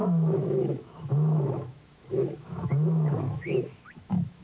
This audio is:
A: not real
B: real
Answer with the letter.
A